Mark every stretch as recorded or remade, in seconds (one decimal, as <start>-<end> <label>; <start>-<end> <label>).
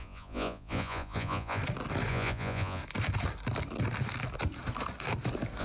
0.0-1.6 remade; 1.6-2.1 recorded; 2.1-2.8 remade; 2.8-5.6 recorded